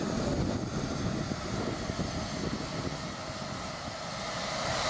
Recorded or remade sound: recorded